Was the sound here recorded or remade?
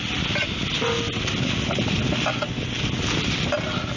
recorded